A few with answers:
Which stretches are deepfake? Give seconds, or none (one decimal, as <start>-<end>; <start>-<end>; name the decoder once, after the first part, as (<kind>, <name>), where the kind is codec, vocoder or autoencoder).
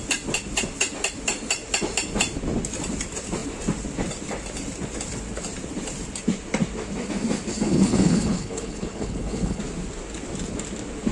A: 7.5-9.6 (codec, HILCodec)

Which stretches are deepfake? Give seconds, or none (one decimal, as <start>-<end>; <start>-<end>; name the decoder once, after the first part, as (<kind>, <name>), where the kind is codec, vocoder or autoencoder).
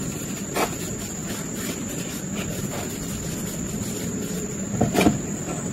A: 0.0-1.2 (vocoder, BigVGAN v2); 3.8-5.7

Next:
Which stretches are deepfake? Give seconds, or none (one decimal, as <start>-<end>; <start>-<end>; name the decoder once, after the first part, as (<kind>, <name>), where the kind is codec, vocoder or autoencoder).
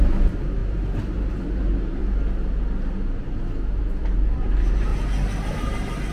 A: 0.0-2.0 (vocoder, BigVGAN v2); 2.8-4.9; 5.5-6.1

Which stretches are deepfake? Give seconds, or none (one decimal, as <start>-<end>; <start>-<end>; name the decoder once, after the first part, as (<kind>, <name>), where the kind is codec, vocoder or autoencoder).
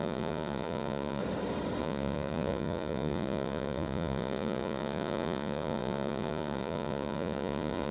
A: 0.0-1.2 (vocoder, Vocos); 1.8-7.9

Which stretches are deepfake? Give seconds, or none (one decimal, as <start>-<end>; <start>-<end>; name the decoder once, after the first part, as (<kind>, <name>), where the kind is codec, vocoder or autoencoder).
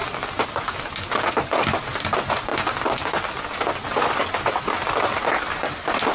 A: none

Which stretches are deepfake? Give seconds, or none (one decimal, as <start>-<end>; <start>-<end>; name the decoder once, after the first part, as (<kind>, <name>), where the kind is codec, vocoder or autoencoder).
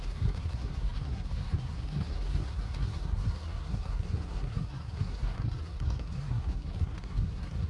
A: 0.0-7.7 (codec, SNAC)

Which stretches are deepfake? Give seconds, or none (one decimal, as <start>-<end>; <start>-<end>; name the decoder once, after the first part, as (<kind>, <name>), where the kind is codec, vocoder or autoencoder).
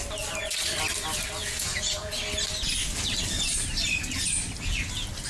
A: 1.4-2.1 (vocoder, Vocos)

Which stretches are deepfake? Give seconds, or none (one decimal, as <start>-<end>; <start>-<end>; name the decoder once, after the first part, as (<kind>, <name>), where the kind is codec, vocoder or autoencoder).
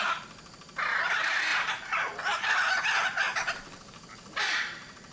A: 0.0-1.5 (vocoder, BigVGAN v2); 4.4-5.1